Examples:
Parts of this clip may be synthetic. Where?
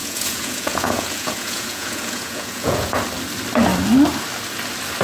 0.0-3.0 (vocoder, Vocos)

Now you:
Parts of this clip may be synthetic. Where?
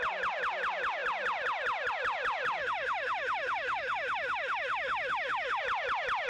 2.6-5.6 (autoencoder, DAC-VAE)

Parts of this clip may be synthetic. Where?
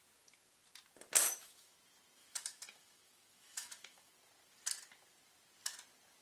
1.2-1.8 (autoencoder, DAC-VAE); 2.2-4.1